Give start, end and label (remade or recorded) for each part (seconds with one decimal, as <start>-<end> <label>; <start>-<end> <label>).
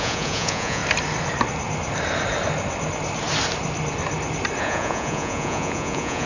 0.0-0.8 remade; 0.8-4.6 recorded; 4.6-6.3 remade